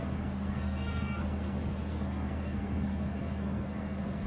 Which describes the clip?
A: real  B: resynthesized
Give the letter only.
B